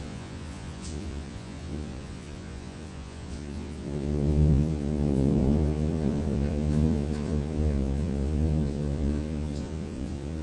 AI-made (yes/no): yes